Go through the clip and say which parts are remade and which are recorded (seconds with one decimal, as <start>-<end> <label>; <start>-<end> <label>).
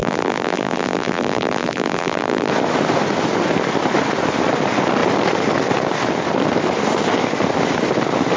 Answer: 0.0-2.5 remade; 2.5-8.4 recorded